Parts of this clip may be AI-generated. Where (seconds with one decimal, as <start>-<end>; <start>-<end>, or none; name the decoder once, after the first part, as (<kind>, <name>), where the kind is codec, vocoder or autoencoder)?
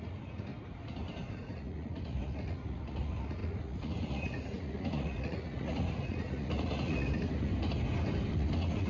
0.0-0.5 (vocoder, Vocos); 1.3-7.5; 8.3-8.9